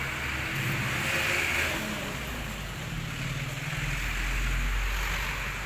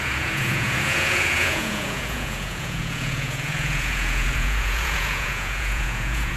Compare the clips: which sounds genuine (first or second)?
first